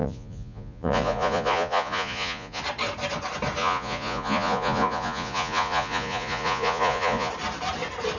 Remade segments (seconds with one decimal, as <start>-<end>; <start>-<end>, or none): 0.0-2.6; 3.6-7.3